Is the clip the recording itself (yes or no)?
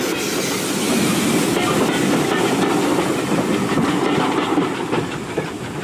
yes